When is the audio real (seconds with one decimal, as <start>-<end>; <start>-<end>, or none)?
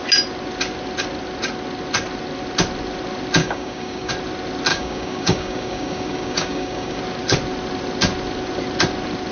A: 0.0-3.4; 4.1-4.7; 7.0-9.3